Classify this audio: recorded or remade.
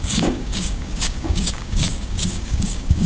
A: remade